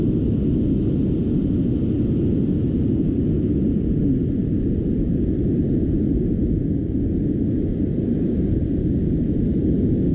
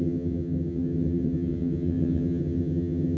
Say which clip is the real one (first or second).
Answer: first